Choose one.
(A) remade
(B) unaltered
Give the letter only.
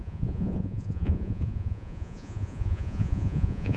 A